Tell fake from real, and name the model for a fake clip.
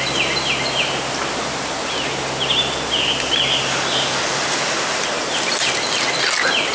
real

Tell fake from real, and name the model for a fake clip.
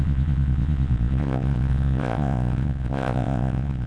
fake, vocoder, Vocos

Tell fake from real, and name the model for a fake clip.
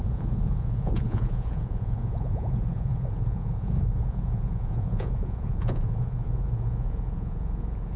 fake, vocoder, Vocos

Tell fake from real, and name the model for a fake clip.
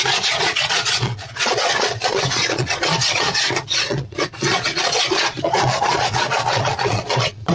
fake, vocoder, Vocos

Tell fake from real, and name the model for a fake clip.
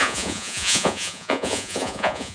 fake, vocoder, Vocos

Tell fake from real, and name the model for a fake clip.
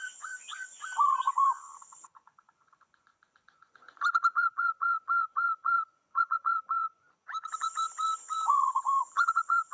fake, vocoder, Vocos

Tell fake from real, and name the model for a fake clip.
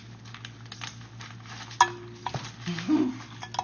real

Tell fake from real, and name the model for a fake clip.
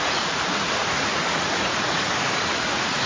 fake, vocoder, Vocos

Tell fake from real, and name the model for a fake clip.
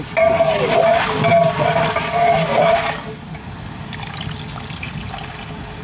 real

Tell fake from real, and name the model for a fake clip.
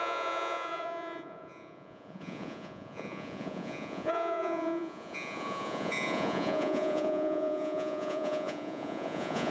fake, vocoder, Vocos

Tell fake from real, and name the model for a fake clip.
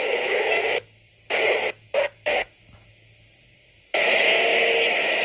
real